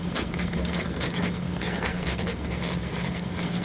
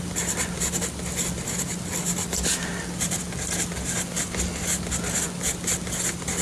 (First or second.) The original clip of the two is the second